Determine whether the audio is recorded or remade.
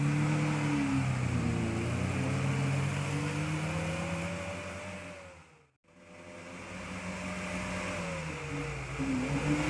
recorded